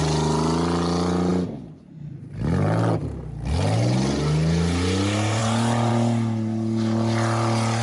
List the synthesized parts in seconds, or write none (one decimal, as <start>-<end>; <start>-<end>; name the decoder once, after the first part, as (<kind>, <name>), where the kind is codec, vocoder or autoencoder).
none

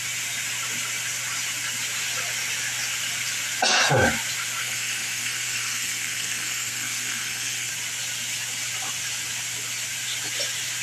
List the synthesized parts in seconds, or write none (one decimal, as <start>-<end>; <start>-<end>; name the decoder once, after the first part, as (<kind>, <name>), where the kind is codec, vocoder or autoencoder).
4.6-7.7 (codec, SNAC)

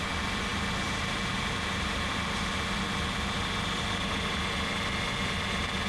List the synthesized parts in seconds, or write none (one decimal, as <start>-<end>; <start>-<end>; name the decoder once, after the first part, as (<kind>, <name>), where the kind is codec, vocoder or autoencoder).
none

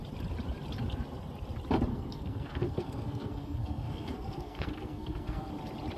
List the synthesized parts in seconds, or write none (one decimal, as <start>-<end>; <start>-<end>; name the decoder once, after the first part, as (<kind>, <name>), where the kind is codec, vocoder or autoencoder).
1.9-5.5 (codec, SNAC)

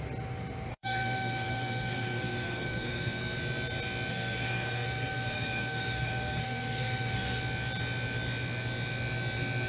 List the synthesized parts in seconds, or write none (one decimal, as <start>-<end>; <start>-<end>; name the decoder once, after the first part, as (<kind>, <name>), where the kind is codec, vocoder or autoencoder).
0.7-3.2 (codec, SNAC); 4.1-7.4

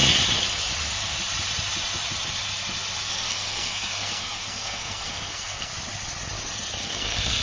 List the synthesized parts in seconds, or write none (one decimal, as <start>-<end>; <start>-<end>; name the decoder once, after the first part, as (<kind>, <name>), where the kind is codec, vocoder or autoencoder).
3.1-5.7 (codec, SNAC); 6.8-7.4

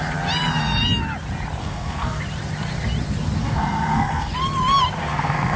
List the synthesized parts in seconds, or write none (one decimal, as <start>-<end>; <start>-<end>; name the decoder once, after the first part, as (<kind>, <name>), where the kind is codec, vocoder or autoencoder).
1.6-2.2 (codec, SNAC); 3.4-4.3; 5.0-5.6